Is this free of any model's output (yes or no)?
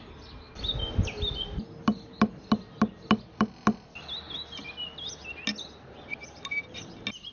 yes